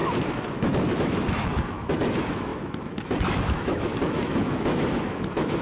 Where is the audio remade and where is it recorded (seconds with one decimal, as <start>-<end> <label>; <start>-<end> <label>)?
0.0-5.6 remade